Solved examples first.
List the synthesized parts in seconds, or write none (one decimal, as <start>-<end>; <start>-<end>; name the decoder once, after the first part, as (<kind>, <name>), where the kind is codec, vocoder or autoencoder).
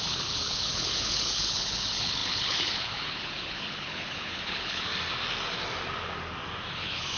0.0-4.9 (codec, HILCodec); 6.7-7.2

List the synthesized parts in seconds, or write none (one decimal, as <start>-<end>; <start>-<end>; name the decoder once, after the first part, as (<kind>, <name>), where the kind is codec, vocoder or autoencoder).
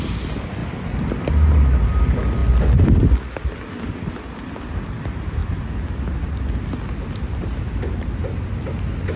none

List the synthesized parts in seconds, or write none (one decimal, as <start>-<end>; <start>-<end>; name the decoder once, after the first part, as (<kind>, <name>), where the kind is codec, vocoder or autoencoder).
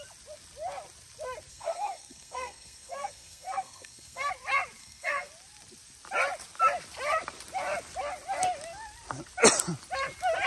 1.5-4.3 (codec, SNAC); 4.8-5.3